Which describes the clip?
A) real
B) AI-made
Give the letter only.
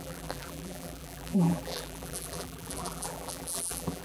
B